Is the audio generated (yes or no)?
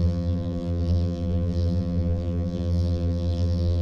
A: yes